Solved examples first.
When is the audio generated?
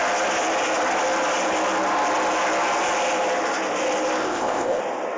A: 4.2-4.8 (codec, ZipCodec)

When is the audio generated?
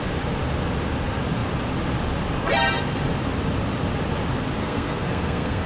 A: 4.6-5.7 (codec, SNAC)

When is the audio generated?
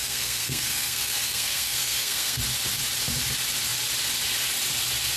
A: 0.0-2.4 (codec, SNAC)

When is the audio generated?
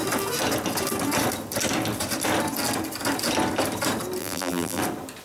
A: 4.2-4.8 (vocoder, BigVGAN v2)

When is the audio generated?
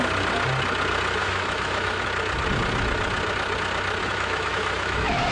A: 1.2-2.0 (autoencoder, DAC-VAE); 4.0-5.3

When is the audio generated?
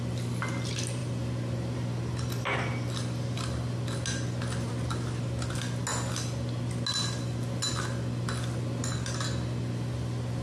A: none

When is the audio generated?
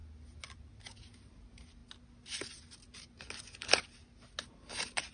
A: 1.3-1.8 (vocoder, BigVGAN v2); 4.6-5.1